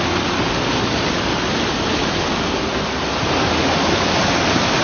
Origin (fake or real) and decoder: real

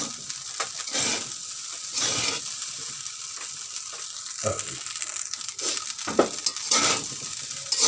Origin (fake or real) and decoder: real